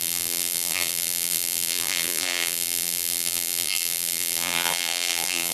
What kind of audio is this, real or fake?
fake